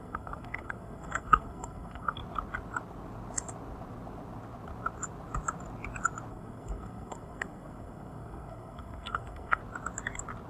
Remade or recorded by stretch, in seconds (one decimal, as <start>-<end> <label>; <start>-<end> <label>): 0.0-2.2 remade; 2.2-6.3 recorded; 6.3-9.6 remade; 9.6-10.5 recorded